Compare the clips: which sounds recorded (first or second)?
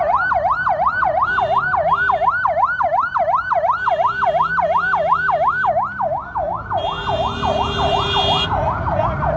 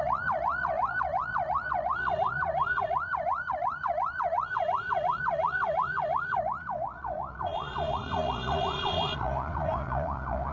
first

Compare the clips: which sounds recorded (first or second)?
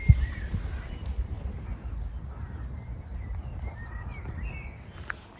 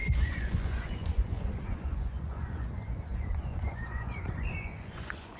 first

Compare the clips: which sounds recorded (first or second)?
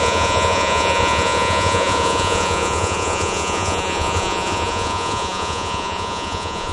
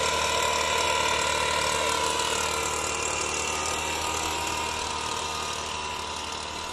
second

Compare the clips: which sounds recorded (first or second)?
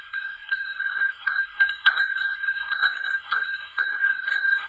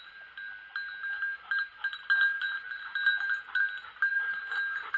second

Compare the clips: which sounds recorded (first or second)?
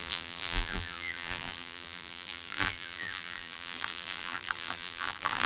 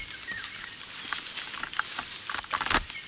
second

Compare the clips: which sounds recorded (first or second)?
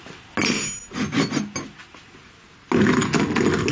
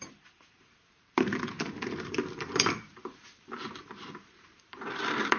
first